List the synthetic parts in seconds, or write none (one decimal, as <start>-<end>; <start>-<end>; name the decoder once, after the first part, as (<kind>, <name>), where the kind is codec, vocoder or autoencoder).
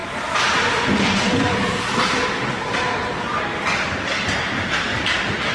0.0-3.0 (vocoder, BigVGAN v2); 4.5-5.5